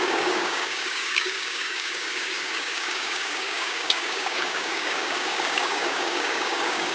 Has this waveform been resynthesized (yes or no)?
yes